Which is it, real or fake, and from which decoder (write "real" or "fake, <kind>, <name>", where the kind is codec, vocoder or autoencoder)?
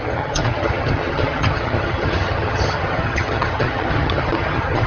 fake, vocoder, HiFi-GAN